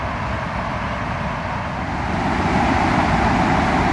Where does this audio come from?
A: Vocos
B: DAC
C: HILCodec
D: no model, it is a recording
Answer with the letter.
D